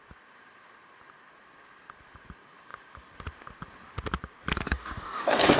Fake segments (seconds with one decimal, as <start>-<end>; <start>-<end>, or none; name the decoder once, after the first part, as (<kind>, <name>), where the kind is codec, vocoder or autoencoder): 4.5-5.6 (codec, DAC)